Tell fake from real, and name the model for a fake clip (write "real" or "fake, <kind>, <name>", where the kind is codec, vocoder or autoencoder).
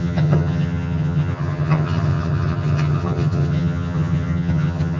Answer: fake, vocoder, HiFi-GAN